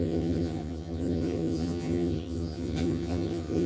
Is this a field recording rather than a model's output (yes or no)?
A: no